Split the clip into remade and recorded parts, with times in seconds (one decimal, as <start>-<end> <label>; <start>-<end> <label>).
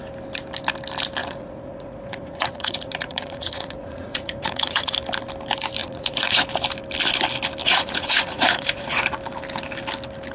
0.0-1.2 recorded; 1.2-4.9 remade; 4.9-5.8 recorded; 5.8-6.4 remade; 6.4-7.6 recorded; 7.6-9.0 remade; 9.0-10.3 recorded